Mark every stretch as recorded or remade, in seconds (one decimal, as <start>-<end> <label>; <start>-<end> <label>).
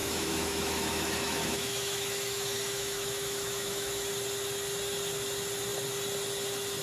0.0-4.1 remade; 4.1-6.8 recorded